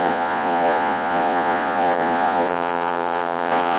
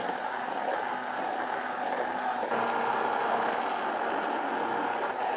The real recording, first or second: second